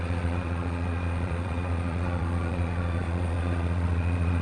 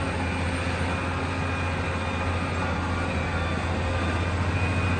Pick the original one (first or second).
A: second